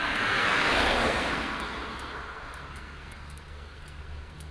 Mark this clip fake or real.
fake